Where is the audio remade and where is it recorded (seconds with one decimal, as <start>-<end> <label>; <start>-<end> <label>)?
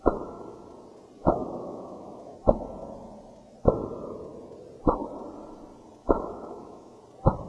0.0-1.2 recorded; 1.2-2.3 remade; 2.3-6.0 recorded; 6.0-7.0 remade; 7.0-7.5 recorded